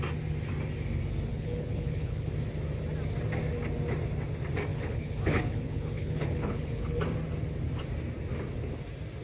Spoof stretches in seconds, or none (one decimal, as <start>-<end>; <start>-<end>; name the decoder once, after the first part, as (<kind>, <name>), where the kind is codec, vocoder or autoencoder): 1.3-2.3 (codec, HILCodec); 4.7-7.0